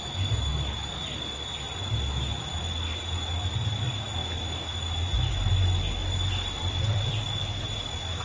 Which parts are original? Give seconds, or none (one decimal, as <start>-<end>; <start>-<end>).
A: 0.0-0.5; 1.0-6.0; 7.1-8.2